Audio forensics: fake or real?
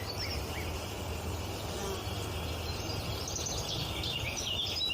real